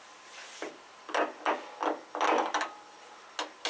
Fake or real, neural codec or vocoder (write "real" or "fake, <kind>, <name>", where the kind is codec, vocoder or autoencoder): real